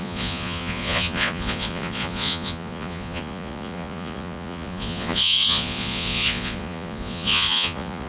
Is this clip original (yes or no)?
no